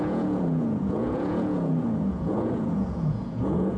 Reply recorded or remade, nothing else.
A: remade